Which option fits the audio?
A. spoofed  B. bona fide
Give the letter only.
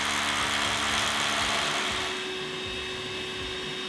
B